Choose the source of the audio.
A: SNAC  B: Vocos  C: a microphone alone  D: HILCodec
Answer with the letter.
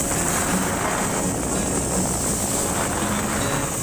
C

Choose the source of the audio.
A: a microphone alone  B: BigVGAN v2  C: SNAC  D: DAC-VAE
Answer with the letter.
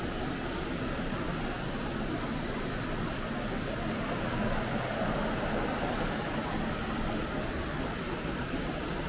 A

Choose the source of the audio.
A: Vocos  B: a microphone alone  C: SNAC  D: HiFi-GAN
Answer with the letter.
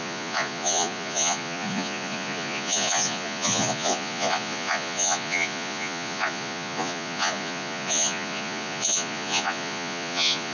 A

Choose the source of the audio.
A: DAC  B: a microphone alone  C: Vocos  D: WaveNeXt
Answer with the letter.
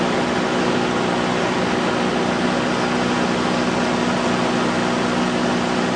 B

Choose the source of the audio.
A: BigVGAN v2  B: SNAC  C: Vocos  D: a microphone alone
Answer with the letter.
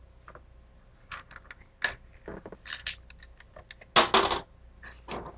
D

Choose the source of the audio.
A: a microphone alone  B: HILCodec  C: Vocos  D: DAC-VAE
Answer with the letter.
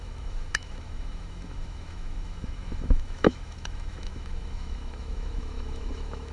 D